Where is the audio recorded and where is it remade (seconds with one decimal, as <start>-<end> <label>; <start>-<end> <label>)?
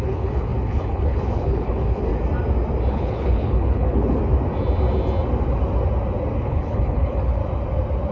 0.0-2.1 remade; 2.1-2.9 recorded; 2.9-4.2 remade; 4.2-6.4 recorded; 6.4-7.4 remade; 7.4-8.1 recorded